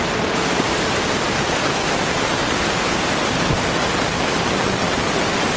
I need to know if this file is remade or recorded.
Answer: recorded